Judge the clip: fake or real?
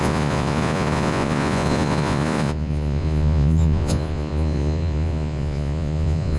fake